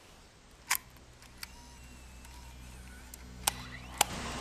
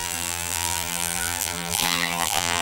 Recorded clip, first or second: first